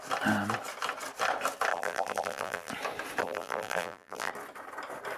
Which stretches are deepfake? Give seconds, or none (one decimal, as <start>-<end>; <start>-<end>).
1.7-2.7; 3.2-4.3